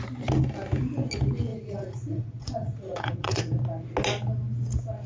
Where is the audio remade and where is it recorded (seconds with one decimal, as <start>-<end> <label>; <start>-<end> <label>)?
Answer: 0.0-1.5 recorded; 1.5-3.4 remade; 3.4-5.1 recorded